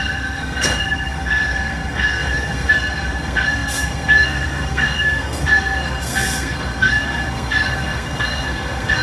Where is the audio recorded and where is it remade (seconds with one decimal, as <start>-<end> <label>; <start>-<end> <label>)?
0.0-9.0 remade